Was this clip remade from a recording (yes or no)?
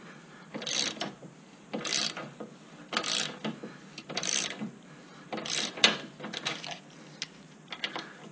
no